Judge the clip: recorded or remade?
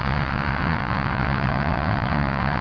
remade